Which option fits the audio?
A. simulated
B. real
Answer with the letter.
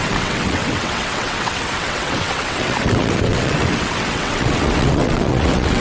A